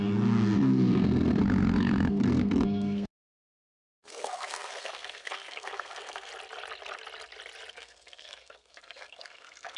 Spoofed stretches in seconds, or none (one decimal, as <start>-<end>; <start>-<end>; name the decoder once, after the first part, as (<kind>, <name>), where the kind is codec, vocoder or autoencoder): 0.0-6.3 (codec, SNAC); 7.7-9.8